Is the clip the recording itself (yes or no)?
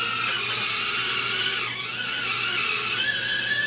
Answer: yes